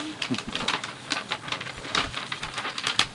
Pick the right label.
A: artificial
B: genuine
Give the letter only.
A